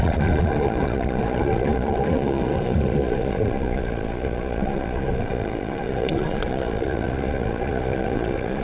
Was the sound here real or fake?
fake